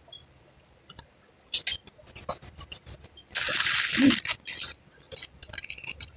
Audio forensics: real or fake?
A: real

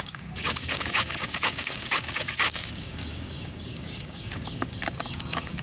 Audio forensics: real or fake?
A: fake